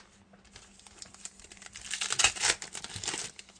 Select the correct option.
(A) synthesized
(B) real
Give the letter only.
B